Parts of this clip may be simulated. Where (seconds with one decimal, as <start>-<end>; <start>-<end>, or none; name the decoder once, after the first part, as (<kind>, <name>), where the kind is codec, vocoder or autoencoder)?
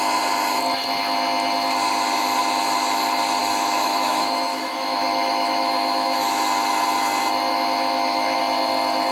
3.4-6.3 (autoencoder, DAC-VAE); 7.5-8.4